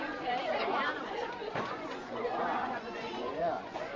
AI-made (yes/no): yes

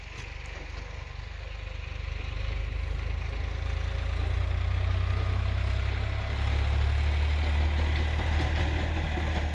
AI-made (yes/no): no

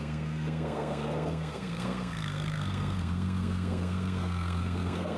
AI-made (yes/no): yes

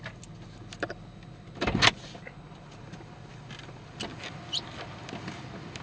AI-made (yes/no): no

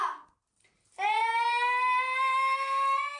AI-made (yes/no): no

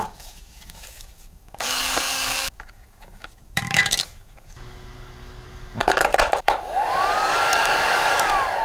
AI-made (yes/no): yes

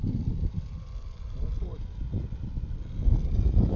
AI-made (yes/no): no